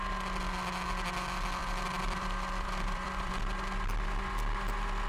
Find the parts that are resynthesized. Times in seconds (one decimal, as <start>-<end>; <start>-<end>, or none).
1.6-3.4